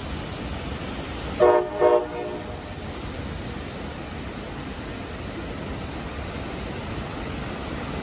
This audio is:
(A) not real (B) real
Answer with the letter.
B